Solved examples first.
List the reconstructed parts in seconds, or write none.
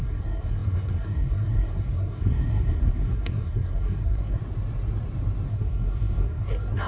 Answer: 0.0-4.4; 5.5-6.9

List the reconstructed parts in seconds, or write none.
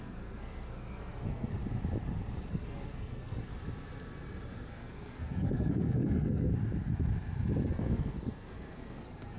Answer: 0.0-1.6; 2.5-3.5; 4.7-6.5; 7.7-9.4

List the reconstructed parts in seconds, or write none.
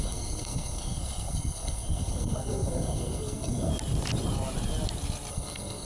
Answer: 0.0-3.7; 5.3-5.8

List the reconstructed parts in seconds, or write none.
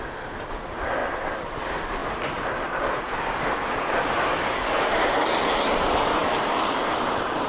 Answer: none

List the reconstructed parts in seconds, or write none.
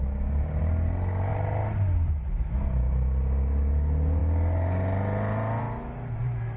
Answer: none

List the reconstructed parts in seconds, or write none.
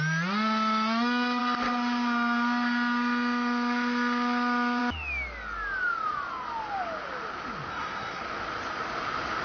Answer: 7.7-8.2